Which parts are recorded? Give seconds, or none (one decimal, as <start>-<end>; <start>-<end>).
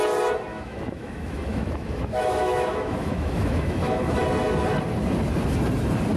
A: 0.0-0.5; 4.2-6.2